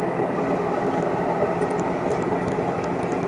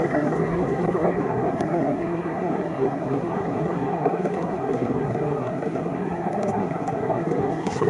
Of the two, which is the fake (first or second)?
second